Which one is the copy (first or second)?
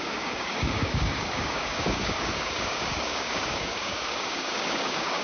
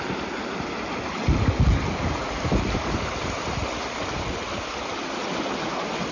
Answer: first